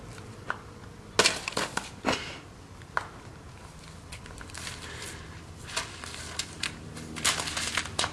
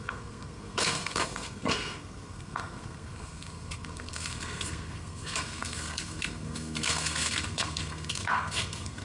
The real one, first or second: first